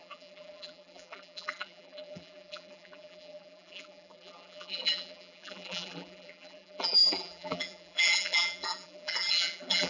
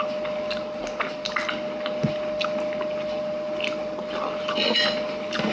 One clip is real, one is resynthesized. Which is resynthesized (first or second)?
first